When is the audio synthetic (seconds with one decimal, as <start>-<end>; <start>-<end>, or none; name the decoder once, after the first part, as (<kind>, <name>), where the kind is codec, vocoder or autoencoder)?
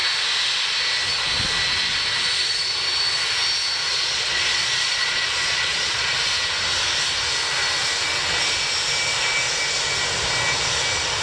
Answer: 3.9-6.2 (vocoder, Vocos)